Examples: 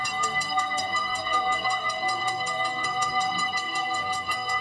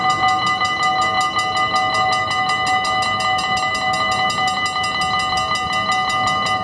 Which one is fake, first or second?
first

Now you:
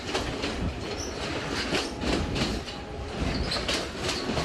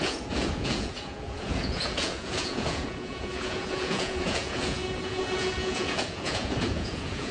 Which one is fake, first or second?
second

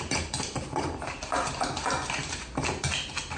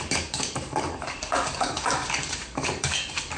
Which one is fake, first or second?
second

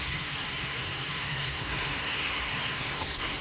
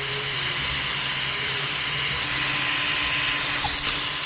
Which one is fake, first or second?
first